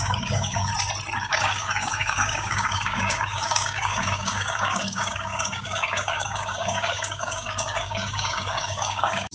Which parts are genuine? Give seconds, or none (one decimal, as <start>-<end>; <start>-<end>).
0.7-1.2